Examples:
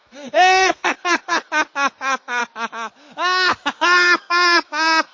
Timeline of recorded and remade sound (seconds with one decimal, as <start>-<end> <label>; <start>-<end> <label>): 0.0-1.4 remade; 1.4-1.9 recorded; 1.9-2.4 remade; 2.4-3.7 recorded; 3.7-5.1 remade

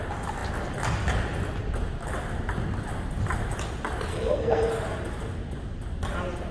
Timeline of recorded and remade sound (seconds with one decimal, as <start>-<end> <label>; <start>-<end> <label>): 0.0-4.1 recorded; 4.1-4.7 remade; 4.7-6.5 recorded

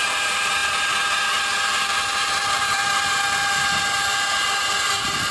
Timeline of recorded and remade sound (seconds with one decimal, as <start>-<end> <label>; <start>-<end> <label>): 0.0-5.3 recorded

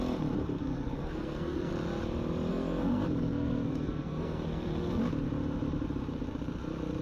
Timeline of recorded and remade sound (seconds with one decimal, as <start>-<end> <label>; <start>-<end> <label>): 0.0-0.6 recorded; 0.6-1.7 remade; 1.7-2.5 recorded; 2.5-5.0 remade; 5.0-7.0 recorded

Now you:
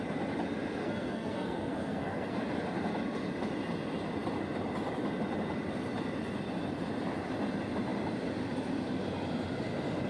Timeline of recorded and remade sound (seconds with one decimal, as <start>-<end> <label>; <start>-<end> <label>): 0.0-0.8 recorded; 0.8-2.4 remade; 2.4-10.1 recorded

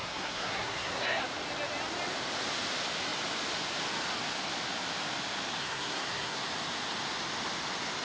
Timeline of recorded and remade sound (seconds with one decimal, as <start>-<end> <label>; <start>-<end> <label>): 0.0-1.2 remade; 1.2-5.6 recorded; 5.6-6.4 remade; 6.4-8.0 recorded

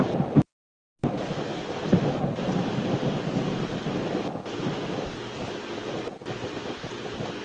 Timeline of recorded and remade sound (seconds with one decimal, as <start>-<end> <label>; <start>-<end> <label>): 0.0-7.4 recorded